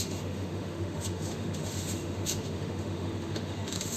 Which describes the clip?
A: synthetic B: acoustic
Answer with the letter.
A